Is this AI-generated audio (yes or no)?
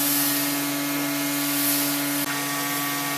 no